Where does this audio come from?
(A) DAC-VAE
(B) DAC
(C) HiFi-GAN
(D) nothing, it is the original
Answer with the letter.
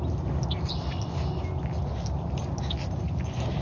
D